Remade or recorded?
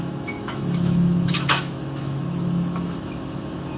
remade